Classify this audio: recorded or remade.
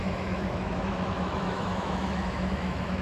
remade